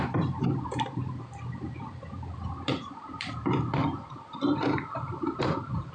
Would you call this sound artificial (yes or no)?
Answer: yes